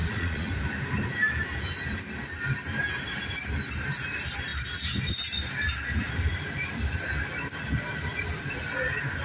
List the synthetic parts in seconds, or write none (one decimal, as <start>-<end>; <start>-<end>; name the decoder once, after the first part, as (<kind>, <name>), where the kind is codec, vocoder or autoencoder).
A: 0.0-0.5 (vocoder, Vocos)